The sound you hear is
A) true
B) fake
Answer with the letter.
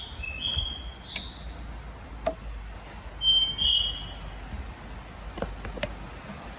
A